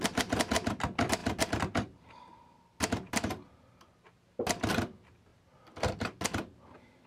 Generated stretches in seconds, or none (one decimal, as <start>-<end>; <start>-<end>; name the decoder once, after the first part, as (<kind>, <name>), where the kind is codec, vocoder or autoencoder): none